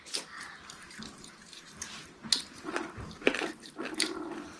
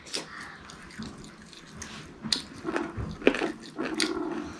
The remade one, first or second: first